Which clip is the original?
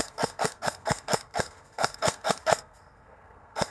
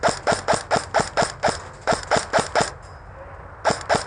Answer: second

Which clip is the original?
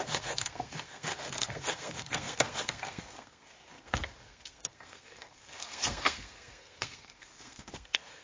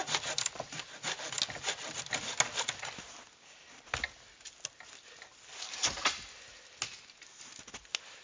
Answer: second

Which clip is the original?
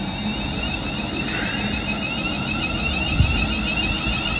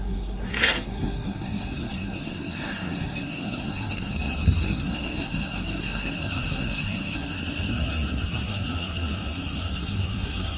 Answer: first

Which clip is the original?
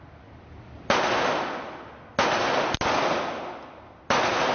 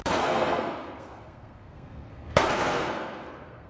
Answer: first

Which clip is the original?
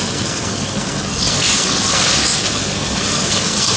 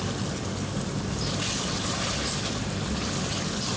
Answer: second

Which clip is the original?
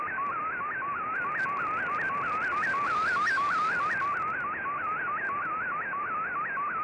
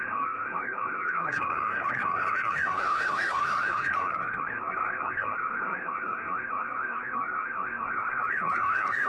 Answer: first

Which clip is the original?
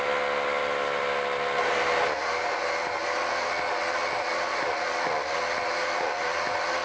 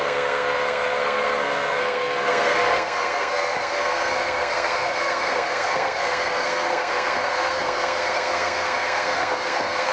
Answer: first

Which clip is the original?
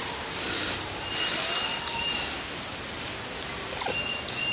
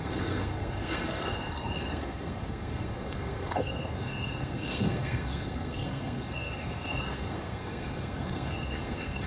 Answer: first